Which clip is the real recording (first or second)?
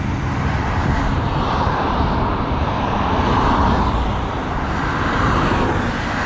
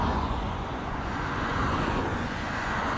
first